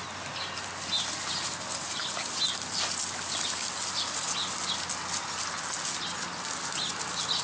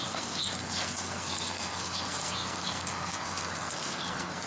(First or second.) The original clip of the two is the first